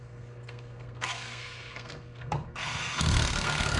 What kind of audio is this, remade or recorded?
remade